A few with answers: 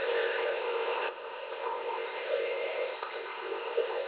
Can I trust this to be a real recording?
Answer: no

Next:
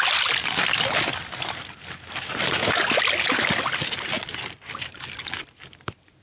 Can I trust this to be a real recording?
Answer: yes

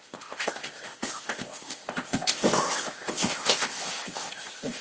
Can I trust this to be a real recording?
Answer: no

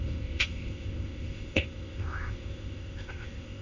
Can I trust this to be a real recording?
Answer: no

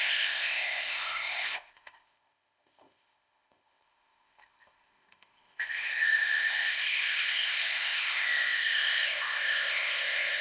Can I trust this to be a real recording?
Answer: no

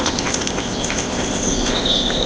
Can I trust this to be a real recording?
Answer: no